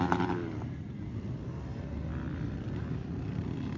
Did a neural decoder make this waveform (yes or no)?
no